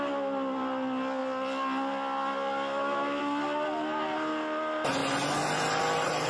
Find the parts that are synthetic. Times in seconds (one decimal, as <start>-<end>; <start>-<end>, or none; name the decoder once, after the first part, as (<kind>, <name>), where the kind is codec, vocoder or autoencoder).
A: none